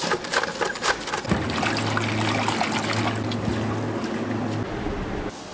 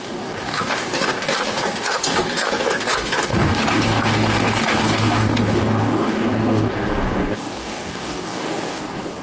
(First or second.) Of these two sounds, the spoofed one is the second